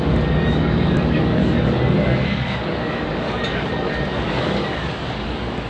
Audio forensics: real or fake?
fake